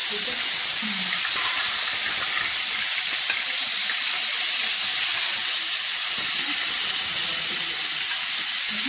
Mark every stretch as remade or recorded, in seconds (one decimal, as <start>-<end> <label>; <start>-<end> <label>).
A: 0.0-8.9 recorded

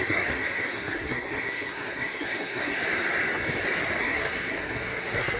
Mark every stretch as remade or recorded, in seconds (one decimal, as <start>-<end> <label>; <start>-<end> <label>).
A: 0.0-2.8 remade; 2.8-4.0 recorded; 4.0-5.4 remade

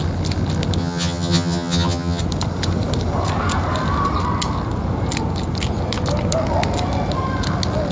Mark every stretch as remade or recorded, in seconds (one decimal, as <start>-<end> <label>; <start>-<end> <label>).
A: 0.0-0.8 recorded; 0.8-2.2 remade; 2.2-7.9 recorded

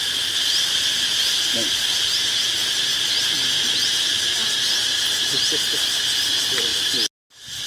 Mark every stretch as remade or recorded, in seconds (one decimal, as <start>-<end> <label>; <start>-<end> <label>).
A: 0.0-7.7 recorded

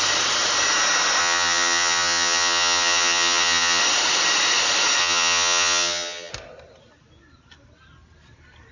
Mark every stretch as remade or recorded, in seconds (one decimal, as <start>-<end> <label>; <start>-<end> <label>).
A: 0.0-1.2 recorded; 1.2-3.8 remade; 3.8-5.0 recorded; 5.0-6.3 remade; 6.3-8.7 recorded

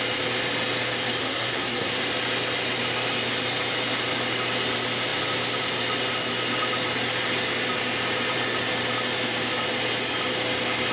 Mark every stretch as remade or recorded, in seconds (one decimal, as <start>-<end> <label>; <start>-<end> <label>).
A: 0.0-1.2 recorded; 1.2-1.9 remade; 1.9-10.9 recorded

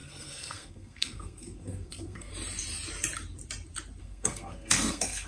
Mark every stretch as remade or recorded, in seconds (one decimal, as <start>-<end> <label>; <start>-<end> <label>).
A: 0.0-2.3 remade; 2.3-4.0 recorded; 4.0-5.3 remade